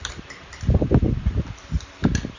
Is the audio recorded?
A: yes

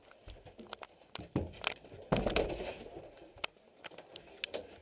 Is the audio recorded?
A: yes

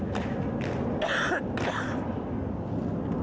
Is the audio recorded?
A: yes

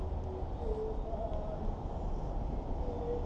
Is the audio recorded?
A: yes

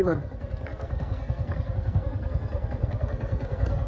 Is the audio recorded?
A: no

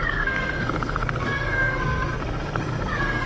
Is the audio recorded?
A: no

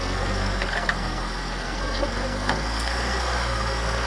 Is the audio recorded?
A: no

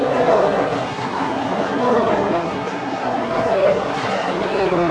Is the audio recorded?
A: no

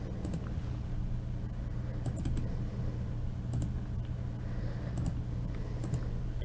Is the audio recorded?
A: yes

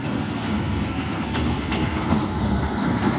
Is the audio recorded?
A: no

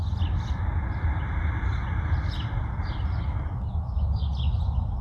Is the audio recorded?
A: yes